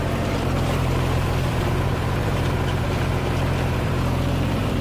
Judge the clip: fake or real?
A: fake